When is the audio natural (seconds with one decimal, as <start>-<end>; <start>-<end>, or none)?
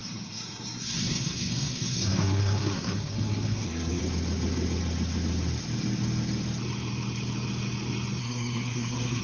4.0-8.2